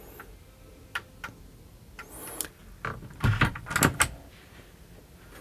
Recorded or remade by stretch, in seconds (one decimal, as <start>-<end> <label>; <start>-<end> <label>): 0.0-5.4 recorded